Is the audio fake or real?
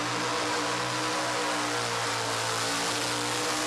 real